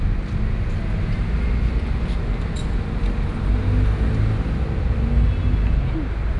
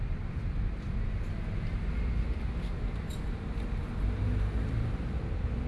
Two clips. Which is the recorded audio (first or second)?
first